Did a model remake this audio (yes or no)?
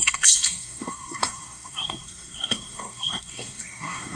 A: yes